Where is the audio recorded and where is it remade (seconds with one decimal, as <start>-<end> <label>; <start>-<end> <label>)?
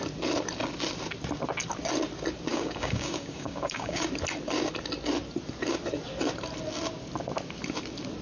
0.0-2.5 recorded; 2.5-4.1 remade; 4.1-8.2 recorded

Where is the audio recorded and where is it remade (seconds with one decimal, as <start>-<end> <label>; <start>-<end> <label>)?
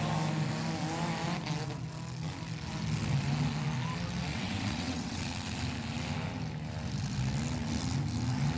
0.0-4.3 recorded; 4.3-5.2 remade; 5.2-8.6 recorded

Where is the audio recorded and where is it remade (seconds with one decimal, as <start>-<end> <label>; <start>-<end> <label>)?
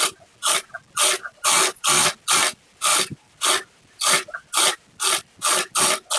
0.0-6.2 recorded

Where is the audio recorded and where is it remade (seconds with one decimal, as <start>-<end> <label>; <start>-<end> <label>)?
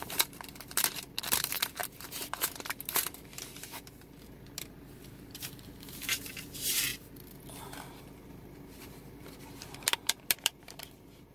0.0-6.9 remade; 6.9-8.3 recorded; 8.3-11.3 remade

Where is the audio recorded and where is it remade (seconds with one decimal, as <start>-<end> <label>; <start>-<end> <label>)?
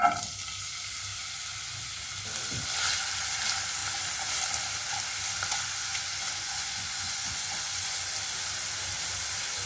0.0-5.5 recorded; 5.5-8.1 remade; 8.1-9.7 recorded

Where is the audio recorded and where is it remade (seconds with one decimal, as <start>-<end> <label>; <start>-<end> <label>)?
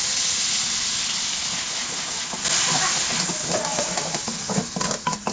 0.0-5.3 recorded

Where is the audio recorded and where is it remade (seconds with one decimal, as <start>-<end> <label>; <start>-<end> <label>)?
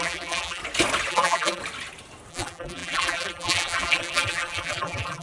0.0-0.6 remade; 0.6-1.1 recorded; 1.1-1.6 remade; 1.6-2.3 recorded; 2.3-5.2 remade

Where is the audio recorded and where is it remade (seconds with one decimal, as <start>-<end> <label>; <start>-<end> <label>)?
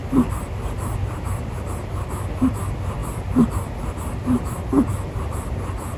0.0-6.0 recorded